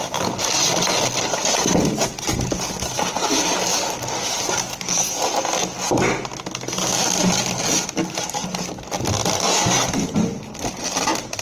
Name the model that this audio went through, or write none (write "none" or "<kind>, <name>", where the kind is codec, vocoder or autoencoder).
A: none